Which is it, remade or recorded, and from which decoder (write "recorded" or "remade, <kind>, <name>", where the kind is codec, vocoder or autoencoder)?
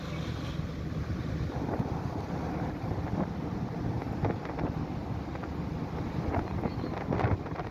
recorded